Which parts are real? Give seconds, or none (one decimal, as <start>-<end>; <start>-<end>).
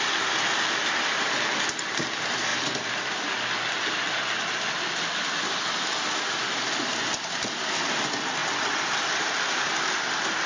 0.0-10.5